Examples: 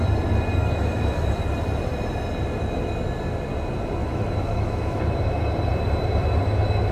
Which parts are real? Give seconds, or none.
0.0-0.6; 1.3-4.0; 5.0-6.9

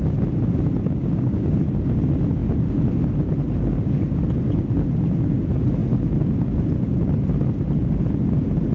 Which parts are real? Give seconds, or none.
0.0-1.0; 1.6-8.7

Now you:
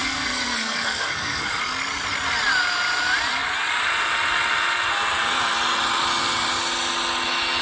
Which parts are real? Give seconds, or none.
1.6-7.6

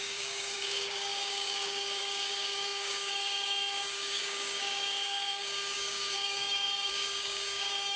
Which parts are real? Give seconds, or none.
none